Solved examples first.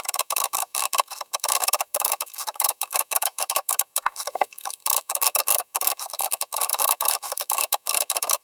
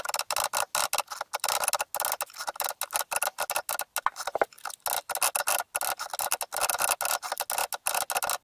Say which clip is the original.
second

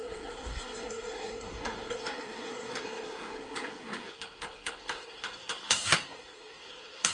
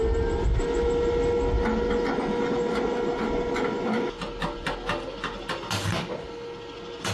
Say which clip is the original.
second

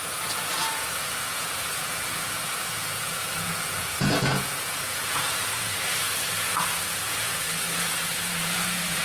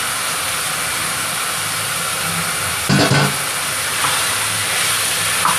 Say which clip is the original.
second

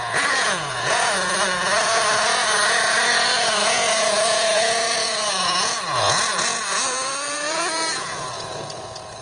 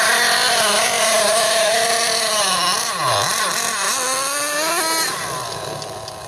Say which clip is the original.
second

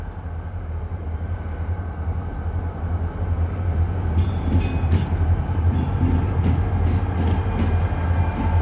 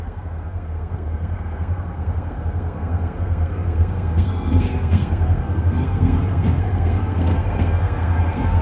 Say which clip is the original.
first